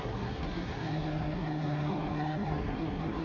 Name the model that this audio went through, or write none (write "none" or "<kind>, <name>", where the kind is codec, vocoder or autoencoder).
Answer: codec, SNAC